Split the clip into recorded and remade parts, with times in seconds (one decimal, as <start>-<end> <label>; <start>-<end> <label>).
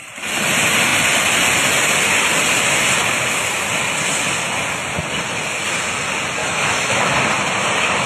0.0-6.4 recorded; 6.4-7.1 remade; 7.1-8.1 recorded